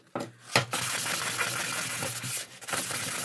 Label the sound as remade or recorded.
recorded